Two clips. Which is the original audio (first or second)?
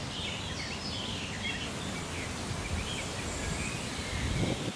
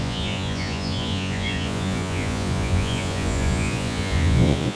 first